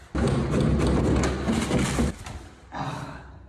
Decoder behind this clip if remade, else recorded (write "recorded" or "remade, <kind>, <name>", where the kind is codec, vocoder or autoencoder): recorded